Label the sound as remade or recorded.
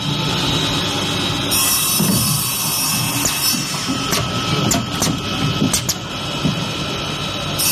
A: recorded